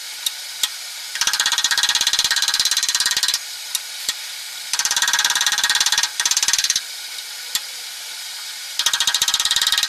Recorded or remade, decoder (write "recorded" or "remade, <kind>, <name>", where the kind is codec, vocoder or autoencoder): remade, vocoder, BigVGAN v2